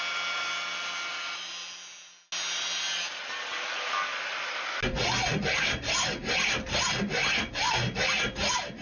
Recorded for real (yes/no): yes